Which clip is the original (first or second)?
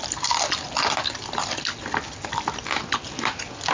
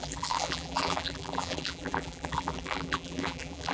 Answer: first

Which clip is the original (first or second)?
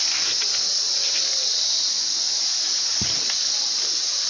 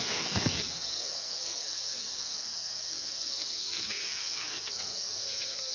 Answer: first